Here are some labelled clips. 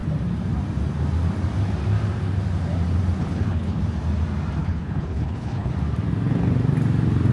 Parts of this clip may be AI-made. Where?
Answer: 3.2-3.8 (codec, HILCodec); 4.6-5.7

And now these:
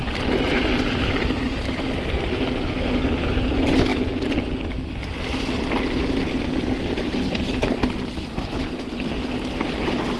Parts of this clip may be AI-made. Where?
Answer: none

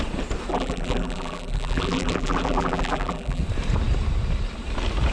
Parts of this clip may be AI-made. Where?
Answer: 0.5-3.4 (vocoder, BigVGAN v2)

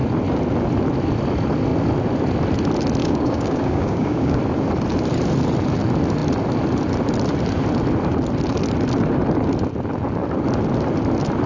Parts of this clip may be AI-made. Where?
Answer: 3.0-4.4 (codec, DAC)

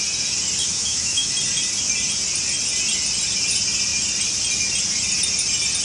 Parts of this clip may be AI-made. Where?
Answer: 0.6-1.3 (autoencoder, DAC-VAE)